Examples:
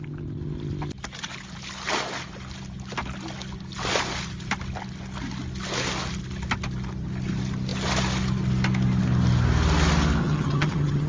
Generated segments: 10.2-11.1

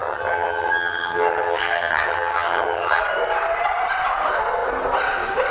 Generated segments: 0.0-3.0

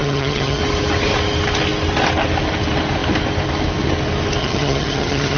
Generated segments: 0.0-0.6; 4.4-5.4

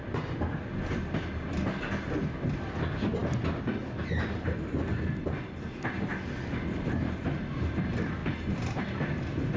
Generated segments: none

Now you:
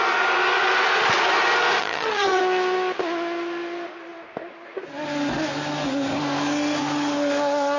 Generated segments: 1.8-2.4

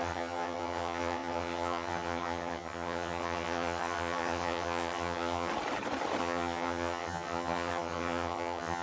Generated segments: 0.0-5.5; 6.2-8.8